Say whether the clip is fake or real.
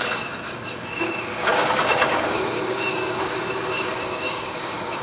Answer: fake